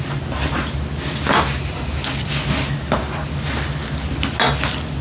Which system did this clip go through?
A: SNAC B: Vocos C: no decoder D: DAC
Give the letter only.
C